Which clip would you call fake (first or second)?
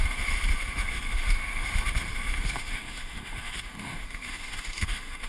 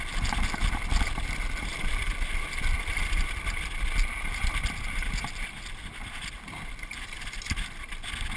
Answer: first